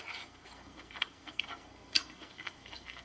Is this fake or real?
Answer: fake